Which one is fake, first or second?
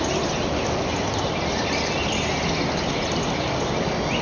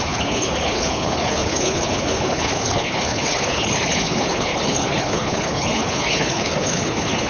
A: second